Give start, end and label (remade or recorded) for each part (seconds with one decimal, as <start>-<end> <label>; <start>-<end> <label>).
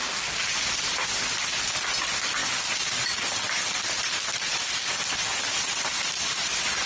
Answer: 0.0-6.9 recorded